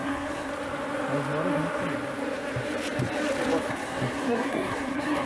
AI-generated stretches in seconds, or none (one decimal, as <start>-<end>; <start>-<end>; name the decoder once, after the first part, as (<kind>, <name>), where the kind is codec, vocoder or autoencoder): 0.0-0.5 (codec, SNAC); 3.7-5.3